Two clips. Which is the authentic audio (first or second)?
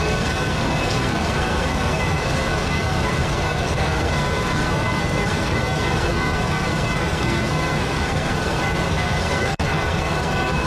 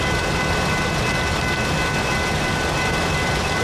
second